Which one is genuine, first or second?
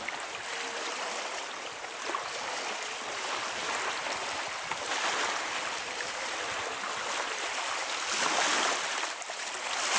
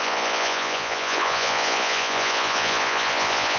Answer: first